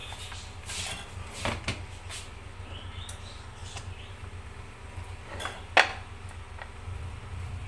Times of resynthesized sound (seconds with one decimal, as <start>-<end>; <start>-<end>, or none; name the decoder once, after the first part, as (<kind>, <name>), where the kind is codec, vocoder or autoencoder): none